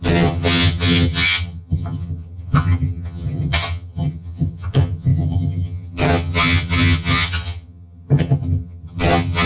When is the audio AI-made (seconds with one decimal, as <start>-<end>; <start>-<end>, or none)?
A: 0.0-9.5